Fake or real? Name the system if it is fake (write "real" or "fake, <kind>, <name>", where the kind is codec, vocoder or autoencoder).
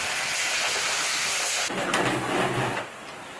real